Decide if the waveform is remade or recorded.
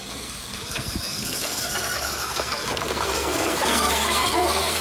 remade